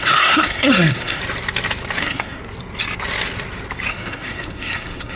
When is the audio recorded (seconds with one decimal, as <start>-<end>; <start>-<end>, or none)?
1.2-2.0; 2.4-3.9